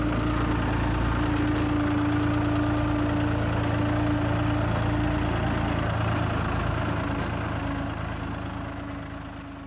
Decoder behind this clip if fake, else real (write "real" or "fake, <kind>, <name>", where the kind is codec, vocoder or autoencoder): real